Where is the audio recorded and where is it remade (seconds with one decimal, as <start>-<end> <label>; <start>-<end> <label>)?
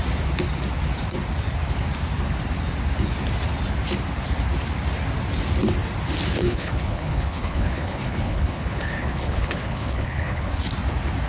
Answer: 0.0-6.4 recorded; 6.4-10.6 remade; 10.6-11.3 recorded